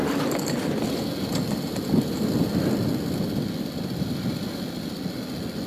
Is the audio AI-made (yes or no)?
no